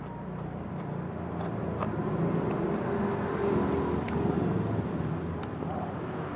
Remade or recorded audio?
recorded